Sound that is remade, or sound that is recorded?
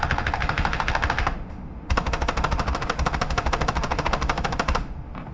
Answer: remade